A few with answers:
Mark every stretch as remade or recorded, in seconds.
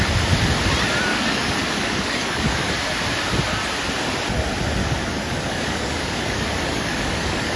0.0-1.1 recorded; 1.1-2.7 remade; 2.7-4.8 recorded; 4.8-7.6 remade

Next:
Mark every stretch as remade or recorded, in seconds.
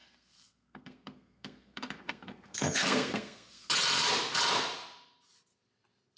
0.0-3.7 remade; 3.7-6.2 recorded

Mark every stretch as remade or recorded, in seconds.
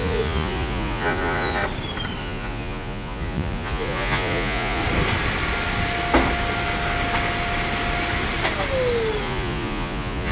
0.0-1.6 remade; 1.6-2.2 recorded; 2.2-4.8 remade; 4.8-9.2 recorded; 9.2-10.3 remade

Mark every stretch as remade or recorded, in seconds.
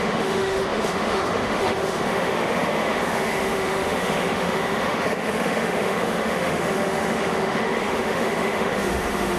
0.0-9.4 remade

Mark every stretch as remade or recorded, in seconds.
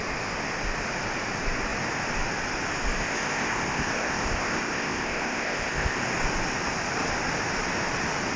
0.0-3.0 recorded; 3.0-6.0 remade; 6.0-8.4 recorded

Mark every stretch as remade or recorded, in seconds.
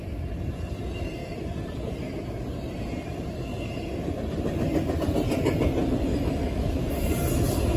0.0-6.1 recorded; 6.1-6.8 remade; 6.8-7.8 recorded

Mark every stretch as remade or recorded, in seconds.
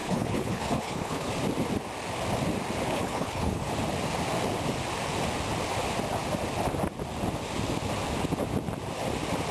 0.0-1.3 remade; 1.3-2.9 recorded; 2.9-3.7 remade; 3.7-9.5 recorded